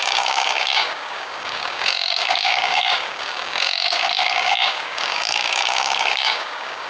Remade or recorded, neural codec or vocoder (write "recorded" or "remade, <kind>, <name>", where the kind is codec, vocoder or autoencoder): remade, codec, DAC